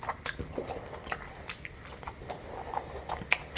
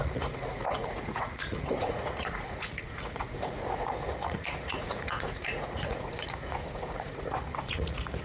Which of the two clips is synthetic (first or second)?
second